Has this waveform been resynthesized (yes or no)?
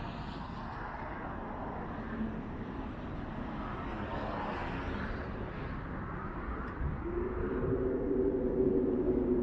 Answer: no